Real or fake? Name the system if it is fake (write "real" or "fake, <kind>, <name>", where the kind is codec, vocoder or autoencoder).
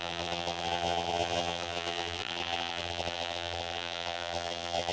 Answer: fake, vocoder, BigVGAN v2